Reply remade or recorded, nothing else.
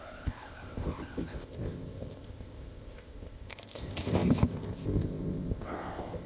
remade